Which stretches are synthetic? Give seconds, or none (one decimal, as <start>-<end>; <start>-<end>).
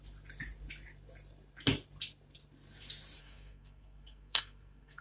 3.2-5.0